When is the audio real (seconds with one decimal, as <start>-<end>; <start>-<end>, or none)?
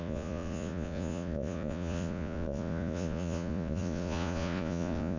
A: none